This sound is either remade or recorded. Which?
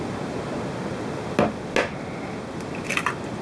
recorded